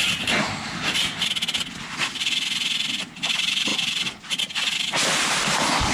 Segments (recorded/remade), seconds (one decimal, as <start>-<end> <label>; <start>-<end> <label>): 0.0-3.7 recorded; 3.7-4.4 remade; 4.4-5.9 recorded